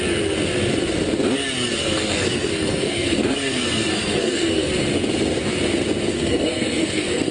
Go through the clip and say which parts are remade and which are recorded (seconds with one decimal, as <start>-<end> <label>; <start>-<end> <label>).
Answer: 0.0-1.8 recorded; 1.8-4.7 remade; 4.7-6.1 recorded; 6.1-7.3 remade